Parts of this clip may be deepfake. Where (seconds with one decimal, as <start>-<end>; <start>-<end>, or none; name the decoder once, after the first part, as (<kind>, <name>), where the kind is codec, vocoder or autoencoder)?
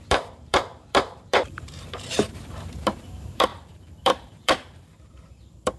0.0-5.8 (vocoder, BigVGAN v2)